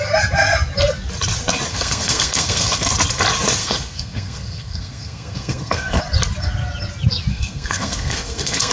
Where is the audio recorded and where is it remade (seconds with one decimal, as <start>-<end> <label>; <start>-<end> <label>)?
0.0-1.7 recorded; 1.7-2.9 remade; 2.9-3.6 recorded; 3.6-6.0 remade; 6.0-7.3 recorded; 7.3-8.7 remade